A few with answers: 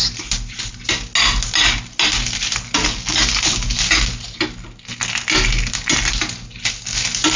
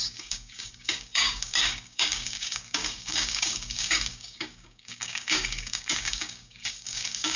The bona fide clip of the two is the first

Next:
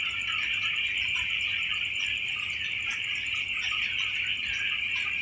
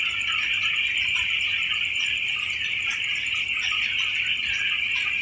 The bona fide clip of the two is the first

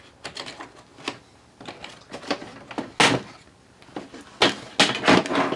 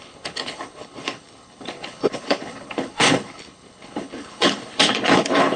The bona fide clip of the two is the first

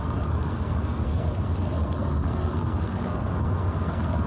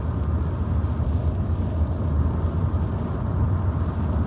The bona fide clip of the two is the second